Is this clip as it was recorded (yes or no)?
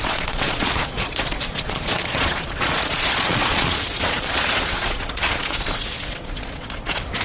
no